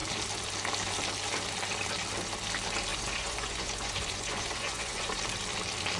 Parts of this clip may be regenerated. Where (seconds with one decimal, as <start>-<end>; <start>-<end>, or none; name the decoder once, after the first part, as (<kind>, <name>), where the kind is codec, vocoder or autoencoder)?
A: 2.9-5.2 (vocoder, Vocos)